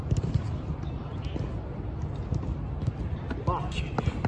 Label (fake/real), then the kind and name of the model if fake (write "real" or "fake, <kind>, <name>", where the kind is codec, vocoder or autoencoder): real